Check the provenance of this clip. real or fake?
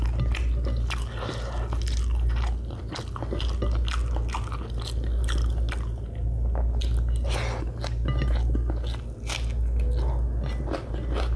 real